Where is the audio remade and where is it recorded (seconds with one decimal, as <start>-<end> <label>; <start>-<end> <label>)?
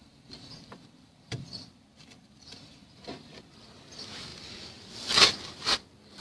0.0-3.6 remade; 3.6-4.3 recorded; 4.3-4.9 remade; 4.9-6.2 recorded